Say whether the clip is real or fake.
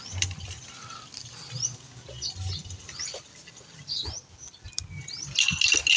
real